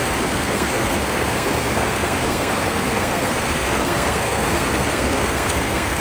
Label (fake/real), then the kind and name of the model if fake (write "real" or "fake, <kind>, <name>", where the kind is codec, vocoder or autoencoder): fake, codec, SNAC